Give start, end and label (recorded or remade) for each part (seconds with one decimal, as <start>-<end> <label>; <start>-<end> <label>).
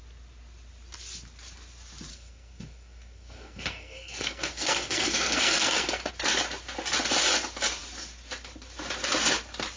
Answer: 0.0-2.1 recorded; 2.1-6.1 remade; 6.1-9.8 recorded